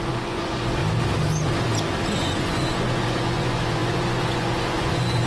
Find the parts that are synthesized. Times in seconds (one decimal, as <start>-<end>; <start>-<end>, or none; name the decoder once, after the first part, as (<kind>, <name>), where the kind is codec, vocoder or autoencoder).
0.0-0.8 (vocoder, Vocos); 2.1-5.3